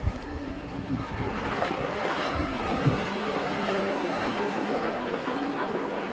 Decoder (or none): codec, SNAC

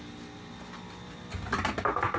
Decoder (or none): none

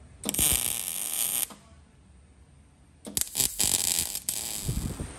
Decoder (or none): none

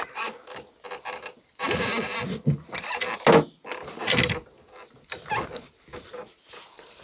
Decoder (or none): none